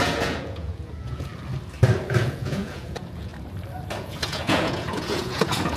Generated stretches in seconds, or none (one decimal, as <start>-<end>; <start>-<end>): 0.0-1.3; 2.2-3.3; 4.0-5.8